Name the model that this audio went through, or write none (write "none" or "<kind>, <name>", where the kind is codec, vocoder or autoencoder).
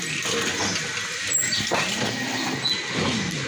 none